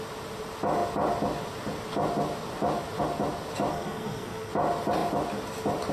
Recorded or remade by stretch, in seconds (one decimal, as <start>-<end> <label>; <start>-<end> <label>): 0.0-3.7 recorded; 3.7-4.5 remade; 4.5-5.9 recorded